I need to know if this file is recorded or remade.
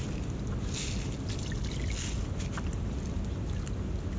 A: recorded